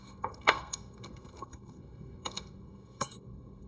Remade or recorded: remade